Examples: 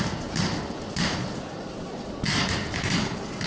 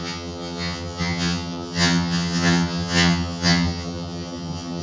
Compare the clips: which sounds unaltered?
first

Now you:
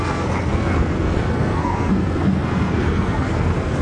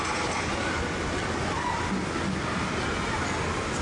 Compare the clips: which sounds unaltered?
second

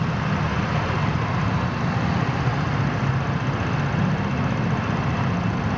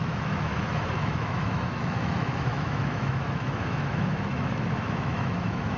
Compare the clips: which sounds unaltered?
first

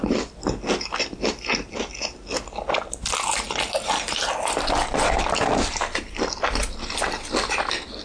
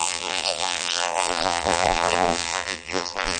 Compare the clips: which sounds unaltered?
first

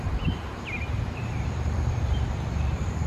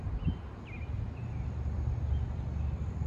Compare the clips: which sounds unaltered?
second